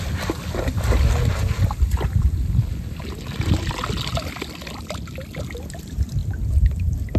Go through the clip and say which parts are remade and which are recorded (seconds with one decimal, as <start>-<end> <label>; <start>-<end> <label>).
0.0-7.2 recorded